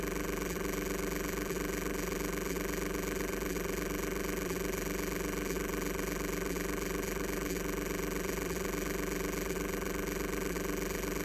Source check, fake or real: fake